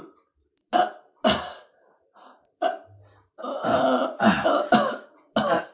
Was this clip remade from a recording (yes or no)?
no